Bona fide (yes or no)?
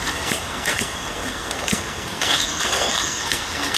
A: no